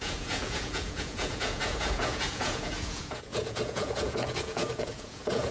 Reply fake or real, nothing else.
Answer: fake